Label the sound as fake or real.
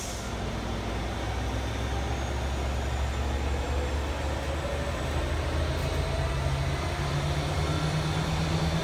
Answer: real